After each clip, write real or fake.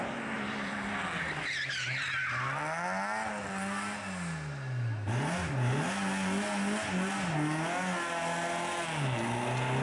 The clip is real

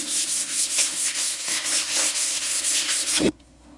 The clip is fake